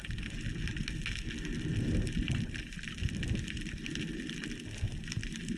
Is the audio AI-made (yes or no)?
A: no